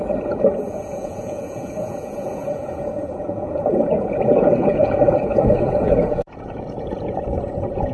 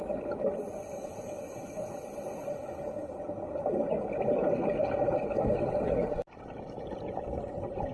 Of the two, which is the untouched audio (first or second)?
second